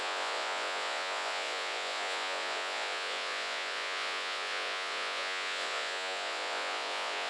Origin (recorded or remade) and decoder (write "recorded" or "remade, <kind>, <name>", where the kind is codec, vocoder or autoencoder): remade, vocoder, Vocos